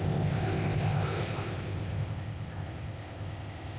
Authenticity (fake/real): fake